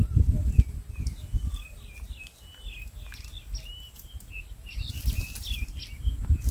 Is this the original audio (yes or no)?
yes